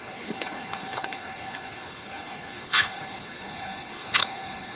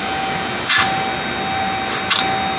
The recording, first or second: second